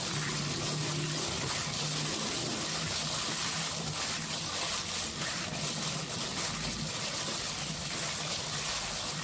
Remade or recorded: recorded